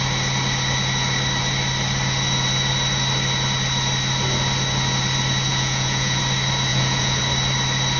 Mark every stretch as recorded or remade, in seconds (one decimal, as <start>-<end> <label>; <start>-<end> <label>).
0.0-5.5 recorded; 5.5-6.2 remade; 6.2-6.7 recorded; 6.7-7.2 remade; 7.2-8.0 recorded